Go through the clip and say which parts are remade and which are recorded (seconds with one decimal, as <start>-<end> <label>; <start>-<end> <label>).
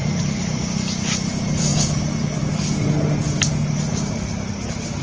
0.0-1.7 remade; 1.7-5.0 recorded